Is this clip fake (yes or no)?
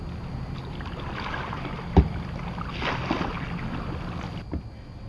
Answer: no